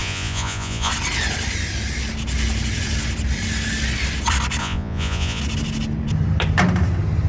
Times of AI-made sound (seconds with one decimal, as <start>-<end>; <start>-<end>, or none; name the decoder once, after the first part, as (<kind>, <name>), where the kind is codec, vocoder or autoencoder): 0.0-0.9 (vocoder, Vocos); 4.6-5.4